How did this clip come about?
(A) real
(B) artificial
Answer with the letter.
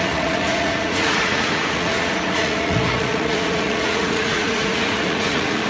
B